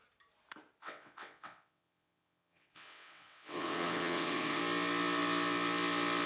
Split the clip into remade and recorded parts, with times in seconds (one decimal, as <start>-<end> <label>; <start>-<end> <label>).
0.0-0.8 recorded; 0.8-4.6 remade; 4.6-6.3 recorded